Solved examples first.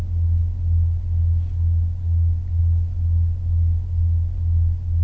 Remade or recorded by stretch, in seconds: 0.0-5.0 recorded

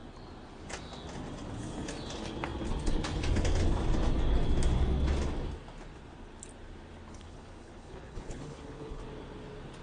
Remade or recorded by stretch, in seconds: 0.0-7.1 recorded; 7.1-9.0 remade; 9.0-9.8 recorded

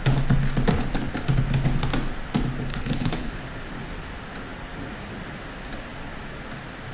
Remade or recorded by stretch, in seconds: 0.0-2.7 recorded; 2.7-3.3 remade; 3.3-6.9 recorded

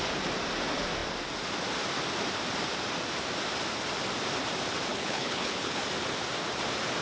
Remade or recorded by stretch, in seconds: 0.0-4.9 recorded; 4.9-5.8 remade; 5.8-7.0 recorded

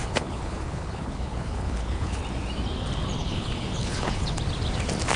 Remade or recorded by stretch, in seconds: 0.0-2.2 remade; 2.2-3.2 recorded; 3.2-4.4 remade; 4.4-5.2 recorded

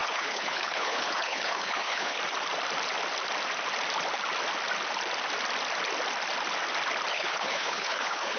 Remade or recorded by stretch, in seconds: 0.0-2.2 remade; 2.2-7.1 recorded; 7.1-8.4 remade